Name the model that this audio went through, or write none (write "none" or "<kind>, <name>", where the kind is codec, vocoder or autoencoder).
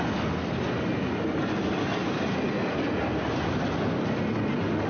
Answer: none